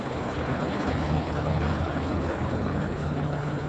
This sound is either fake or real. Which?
fake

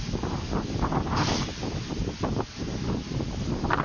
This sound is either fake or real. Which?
real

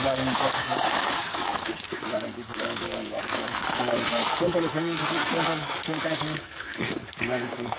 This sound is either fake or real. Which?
fake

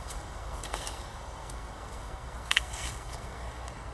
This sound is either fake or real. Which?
fake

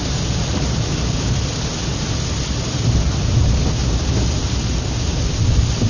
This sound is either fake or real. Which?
real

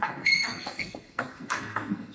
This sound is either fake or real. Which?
fake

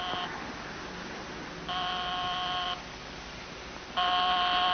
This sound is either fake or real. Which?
real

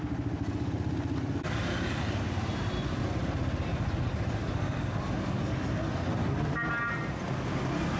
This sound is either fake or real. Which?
real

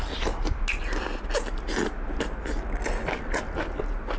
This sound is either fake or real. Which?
real